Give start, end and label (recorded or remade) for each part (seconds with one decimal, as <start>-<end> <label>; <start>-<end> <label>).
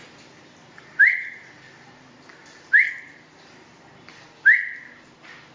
0.0-2.9 remade; 2.9-5.5 recorded